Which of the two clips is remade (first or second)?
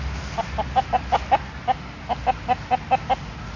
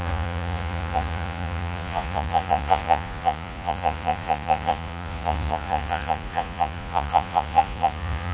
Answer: second